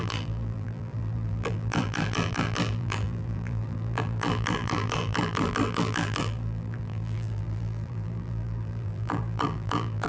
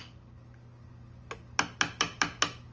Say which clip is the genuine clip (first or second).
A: second